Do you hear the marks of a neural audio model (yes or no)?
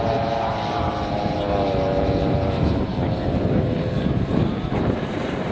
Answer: yes